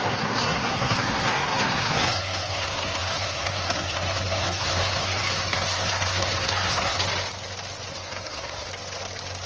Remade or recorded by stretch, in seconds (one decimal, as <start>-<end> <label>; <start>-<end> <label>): 0.0-7.0 remade; 7.0-7.9 recorded; 7.9-8.7 remade; 8.7-9.5 recorded

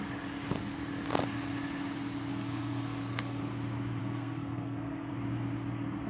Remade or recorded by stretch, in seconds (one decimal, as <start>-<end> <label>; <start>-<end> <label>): 0.0-2.3 recorded; 2.3-3.4 remade; 3.4-4.0 recorded; 4.0-5.1 remade; 5.1-6.1 recorded

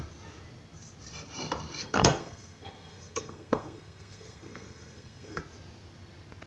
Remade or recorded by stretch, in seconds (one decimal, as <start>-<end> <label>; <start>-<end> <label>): 0.0-1.8 recorded; 1.8-5.4 remade; 5.4-6.5 recorded

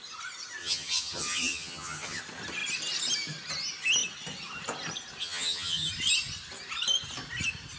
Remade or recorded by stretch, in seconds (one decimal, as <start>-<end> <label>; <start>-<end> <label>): 0.0-0.6 recorded; 0.6-2.2 remade; 2.2-5.2 recorded; 5.2-5.9 remade; 5.9-7.8 recorded

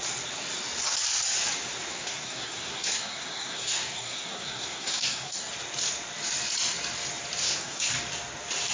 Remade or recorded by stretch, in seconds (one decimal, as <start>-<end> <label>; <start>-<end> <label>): 0.0-1.9 recorded; 1.9-5.5 remade; 5.5-7.4 recorded; 7.4-7.9 remade; 7.9-8.7 recorded

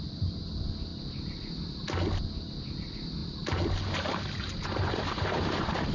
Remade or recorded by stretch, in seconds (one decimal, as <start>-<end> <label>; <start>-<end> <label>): 0.0-3.2 recorded; 3.2-5.9 remade

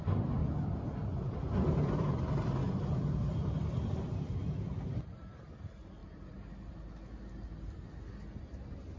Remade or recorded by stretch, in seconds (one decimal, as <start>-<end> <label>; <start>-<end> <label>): 0.0-9.0 recorded

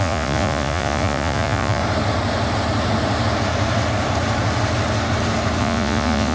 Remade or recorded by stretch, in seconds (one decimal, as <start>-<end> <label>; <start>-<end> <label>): 0.0-1.8 remade; 1.8-5.6 recorded; 5.6-6.3 remade